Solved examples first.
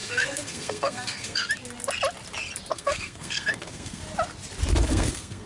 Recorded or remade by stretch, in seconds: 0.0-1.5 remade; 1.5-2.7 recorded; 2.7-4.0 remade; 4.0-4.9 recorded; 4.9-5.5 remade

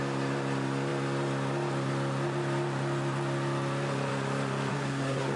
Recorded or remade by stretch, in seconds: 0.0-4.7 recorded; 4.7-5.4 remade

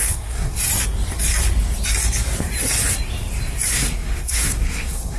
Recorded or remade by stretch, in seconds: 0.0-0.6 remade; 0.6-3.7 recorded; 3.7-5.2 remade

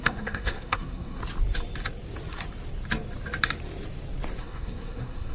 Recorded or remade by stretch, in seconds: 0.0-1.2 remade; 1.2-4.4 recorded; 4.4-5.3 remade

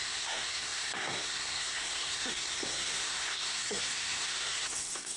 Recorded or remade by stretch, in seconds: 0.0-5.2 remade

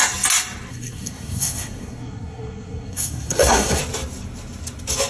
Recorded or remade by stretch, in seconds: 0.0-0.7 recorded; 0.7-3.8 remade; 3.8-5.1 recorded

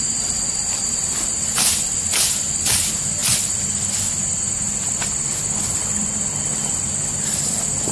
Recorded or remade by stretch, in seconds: 0.0-7.9 recorded

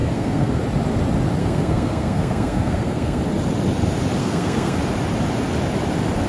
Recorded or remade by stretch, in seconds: 0.0-0.6 remade; 0.6-1.4 recorded; 1.4-3.2 remade; 3.2-4.2 recorded; 4.2-4.8 remade; 4.8-6.3 recorded